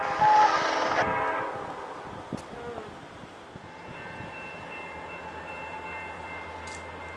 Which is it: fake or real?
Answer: real